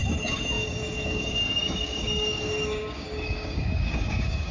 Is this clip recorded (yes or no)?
no